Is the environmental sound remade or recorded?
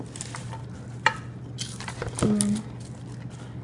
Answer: recorded